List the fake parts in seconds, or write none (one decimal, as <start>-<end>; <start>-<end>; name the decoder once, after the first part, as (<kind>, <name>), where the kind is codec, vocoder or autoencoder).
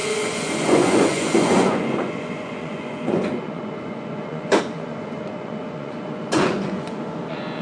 0.0-7.6 (vocoder, Vocos)